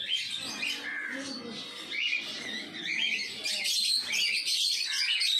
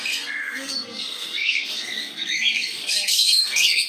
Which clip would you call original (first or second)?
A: first